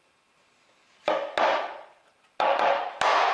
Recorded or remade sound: recorded